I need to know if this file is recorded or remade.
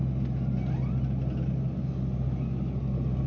recorded